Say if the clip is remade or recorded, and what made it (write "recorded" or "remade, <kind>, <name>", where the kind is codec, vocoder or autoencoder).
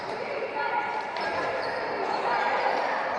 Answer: remade, vocoder, BigVGAN v2